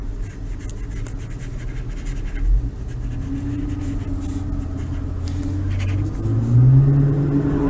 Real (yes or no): yes